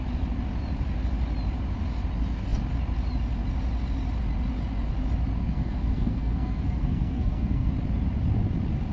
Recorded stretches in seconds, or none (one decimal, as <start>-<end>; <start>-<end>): 0.0-5.4; 7.7-8.9